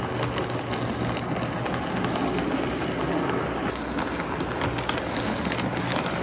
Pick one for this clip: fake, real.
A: real